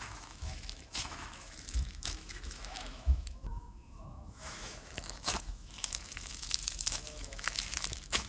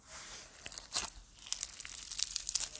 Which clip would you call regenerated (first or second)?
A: first